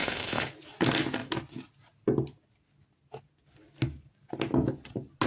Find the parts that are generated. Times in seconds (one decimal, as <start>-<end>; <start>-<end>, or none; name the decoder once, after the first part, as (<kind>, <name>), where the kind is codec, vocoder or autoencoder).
0.0-0.5 (autoencoder, DAC-VAE)